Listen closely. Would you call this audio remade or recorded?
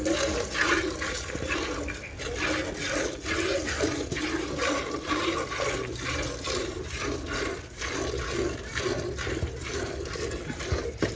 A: recorded